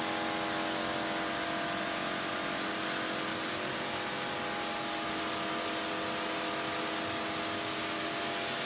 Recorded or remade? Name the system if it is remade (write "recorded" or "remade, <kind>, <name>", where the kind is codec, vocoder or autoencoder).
recorded